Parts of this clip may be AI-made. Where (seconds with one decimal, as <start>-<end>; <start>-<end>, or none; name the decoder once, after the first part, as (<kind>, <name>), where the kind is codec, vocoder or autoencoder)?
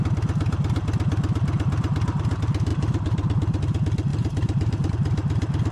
2.7-3.6 (vocoder, BigVGAN v2); 4.1-4.9